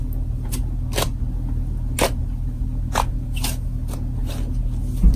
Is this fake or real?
real